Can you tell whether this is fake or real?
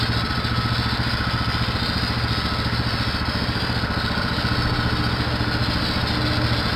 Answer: real